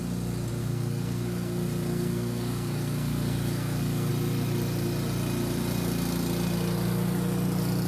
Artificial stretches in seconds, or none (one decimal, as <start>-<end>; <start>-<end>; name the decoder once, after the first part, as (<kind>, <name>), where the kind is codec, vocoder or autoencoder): 0.6-4.1 (codec, SNAC)